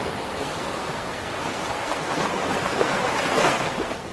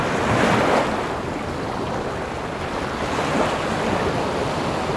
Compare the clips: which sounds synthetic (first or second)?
first